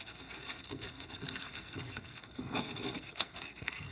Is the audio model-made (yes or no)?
yes